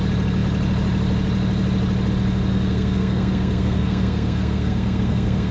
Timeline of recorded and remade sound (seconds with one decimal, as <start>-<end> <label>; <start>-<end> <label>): 0.0-2.5 recorded; 2.5-5.5 remade